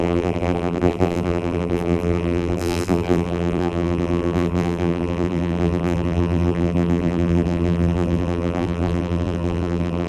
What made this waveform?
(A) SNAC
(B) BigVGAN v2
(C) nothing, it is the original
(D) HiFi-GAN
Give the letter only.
B